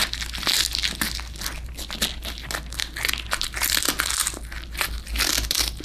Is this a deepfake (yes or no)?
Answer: no